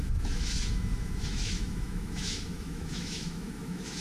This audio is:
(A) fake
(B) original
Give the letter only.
A